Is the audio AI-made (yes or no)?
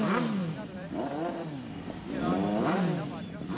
yes